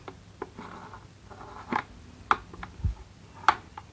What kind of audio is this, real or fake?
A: real